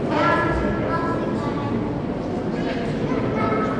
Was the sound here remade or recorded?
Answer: recorded